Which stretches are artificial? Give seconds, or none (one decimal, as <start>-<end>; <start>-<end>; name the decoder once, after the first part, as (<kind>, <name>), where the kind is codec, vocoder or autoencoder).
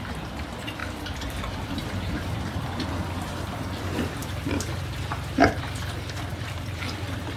0.8-2.9 (vocoder, BigVGAN v2); 6.3-6.8